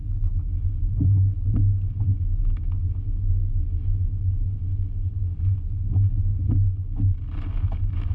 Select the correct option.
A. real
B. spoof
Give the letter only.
A